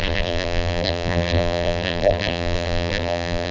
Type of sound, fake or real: fake